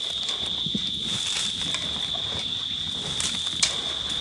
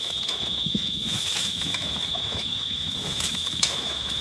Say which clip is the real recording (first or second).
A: first